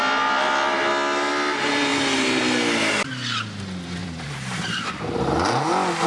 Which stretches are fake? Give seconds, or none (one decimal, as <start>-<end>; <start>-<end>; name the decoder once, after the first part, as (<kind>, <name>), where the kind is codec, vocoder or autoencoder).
0.0-0.9 (vocoder, BigVGAN v2); 4.0-5.0